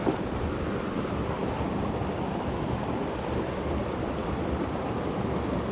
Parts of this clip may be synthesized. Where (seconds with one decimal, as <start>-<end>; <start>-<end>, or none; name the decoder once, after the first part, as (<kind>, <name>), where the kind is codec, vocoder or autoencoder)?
none